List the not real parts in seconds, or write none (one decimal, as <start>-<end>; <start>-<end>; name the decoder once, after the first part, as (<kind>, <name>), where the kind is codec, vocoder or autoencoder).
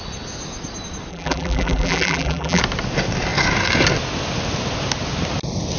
1.1-2.6 (vocoder, BigVGAN v2)